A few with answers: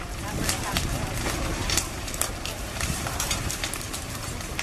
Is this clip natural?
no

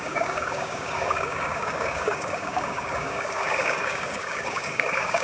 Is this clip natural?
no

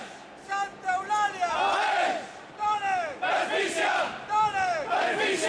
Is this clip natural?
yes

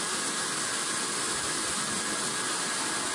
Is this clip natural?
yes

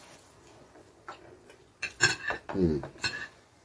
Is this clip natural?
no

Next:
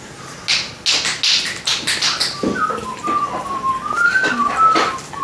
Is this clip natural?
yes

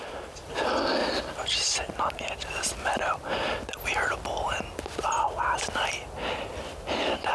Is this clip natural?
yes